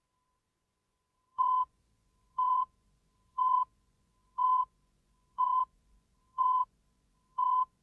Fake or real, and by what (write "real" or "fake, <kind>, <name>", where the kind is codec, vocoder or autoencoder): fake, vocoder, Vocos